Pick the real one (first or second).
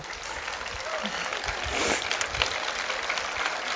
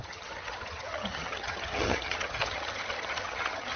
first